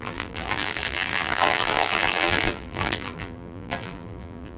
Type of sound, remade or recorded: remade